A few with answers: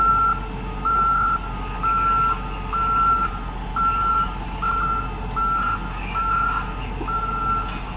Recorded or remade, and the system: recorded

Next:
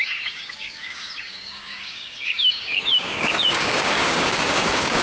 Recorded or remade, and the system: remade, codec, DAC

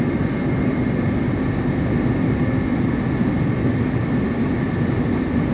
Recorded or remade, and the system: recorded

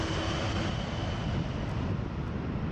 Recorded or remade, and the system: recorded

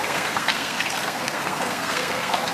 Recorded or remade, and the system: remade, codec, SNAC